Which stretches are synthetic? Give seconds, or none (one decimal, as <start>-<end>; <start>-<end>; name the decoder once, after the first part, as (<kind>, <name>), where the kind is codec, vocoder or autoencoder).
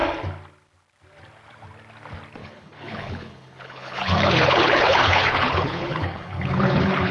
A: 2.4-7.1 (codec, HILCodec)